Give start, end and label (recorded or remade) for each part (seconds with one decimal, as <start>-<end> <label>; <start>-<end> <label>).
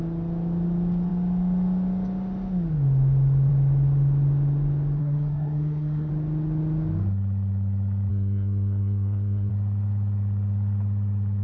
0.0-5.0 recorded; 5.0-6.1 remade; 6.1-8.1 recorded; 8.1-9.5 remade; 9.5-11.4 recorded